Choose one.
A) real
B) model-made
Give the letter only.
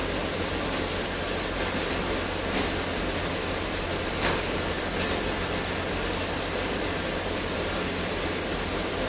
A